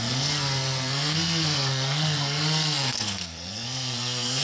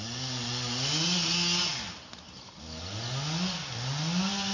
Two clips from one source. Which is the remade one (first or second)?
first